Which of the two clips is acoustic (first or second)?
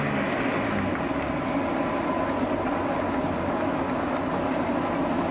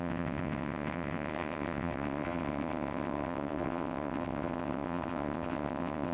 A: first